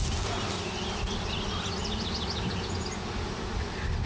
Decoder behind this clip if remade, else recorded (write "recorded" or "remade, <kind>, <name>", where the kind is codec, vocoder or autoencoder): recorded